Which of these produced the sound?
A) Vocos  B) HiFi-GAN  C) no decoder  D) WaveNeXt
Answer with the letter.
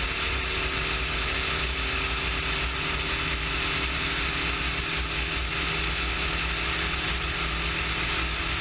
C